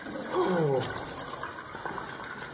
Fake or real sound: real